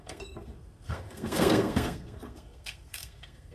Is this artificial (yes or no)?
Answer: yes